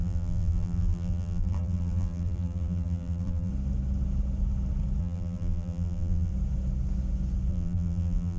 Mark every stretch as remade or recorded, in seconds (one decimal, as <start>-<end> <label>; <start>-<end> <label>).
0.0-3.5 remade; 3.5-5.0 recorded; 5.0-6.3 remade; 6.3-7.5 recorded; 7.5-8.4 remade